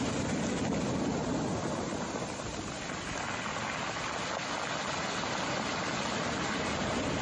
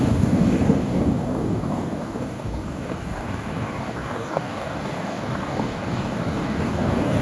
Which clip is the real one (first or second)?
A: first